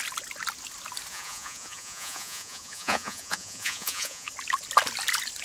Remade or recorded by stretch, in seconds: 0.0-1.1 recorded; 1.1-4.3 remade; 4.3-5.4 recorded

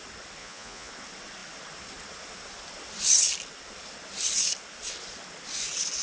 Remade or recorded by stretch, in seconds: 0.0-0.4 recorded; 0.4-0.9 remade; 0.9-6.0 recorded

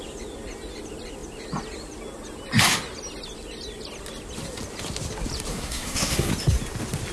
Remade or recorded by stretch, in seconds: 0.0-5.5 recorded; 5.5-6.3 remade; 6.3-7.1 recorded

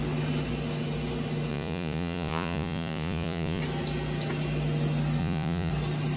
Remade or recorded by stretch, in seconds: 0.0-1.5 recorded; 1.5-3.6 remade; 3.6-5.2 recorded; 5.2-5.7 remade; 5.7-6.2 recorded

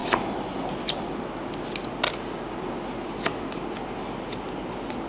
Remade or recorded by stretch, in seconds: 0.0-5.1 recorded

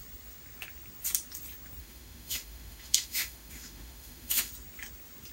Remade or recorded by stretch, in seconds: 0.0-1.8 recorded; 1.8-4.5 remade; 4.5-5.3 recorded

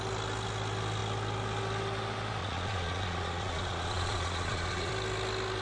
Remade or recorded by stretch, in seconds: 0.0-2.4 recorded; 2.4-4.9 remade; 4.9-5.6 recorded

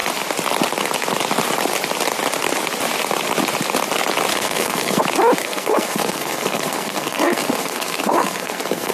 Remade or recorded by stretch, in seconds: 0.0-4.3 recorded; 4.3-5.0 remade; 5.0-5.4 recorded; 5.4-8.9 remade